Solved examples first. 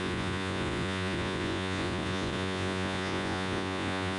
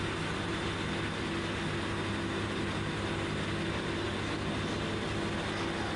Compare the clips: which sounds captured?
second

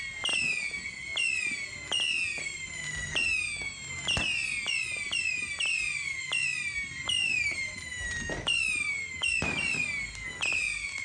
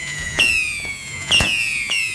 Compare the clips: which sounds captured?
first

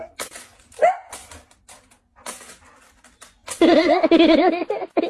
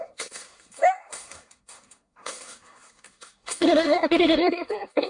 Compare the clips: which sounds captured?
first